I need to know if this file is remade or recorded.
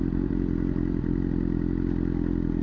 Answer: recorded